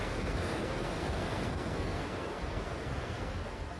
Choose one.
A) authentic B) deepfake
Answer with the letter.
B